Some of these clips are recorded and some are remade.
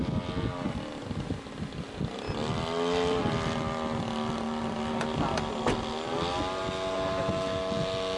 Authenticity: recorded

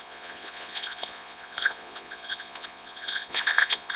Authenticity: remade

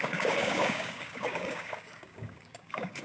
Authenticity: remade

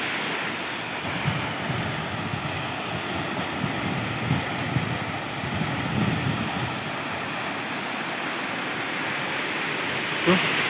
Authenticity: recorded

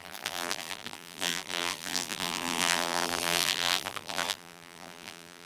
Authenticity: remade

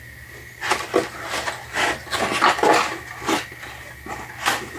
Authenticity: recorded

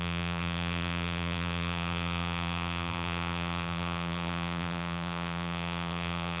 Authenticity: remade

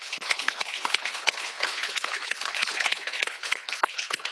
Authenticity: remade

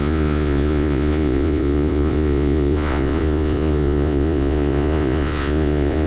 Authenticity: remade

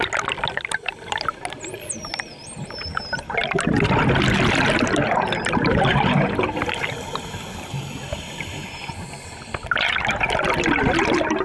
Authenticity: recorded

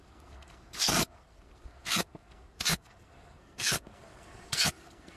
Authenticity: remade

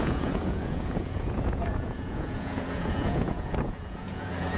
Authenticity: remade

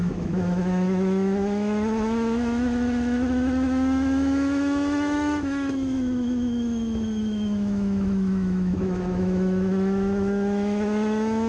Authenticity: remade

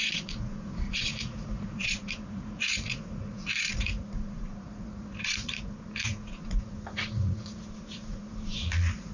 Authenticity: remade